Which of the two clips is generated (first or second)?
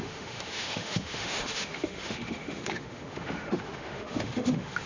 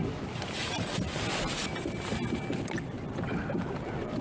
first